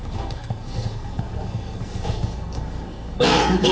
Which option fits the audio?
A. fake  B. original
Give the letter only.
A